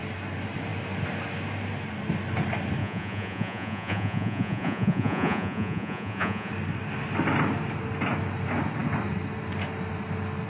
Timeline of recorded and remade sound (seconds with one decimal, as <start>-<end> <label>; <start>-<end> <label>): 0.0-2.8 recorded; 2.8-6.5 remade; 6.5-10.5 recorded